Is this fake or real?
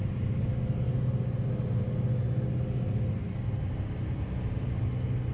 real